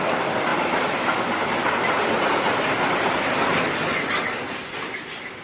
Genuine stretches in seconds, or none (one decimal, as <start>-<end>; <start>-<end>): 0.0-0.5; 3.7-5.4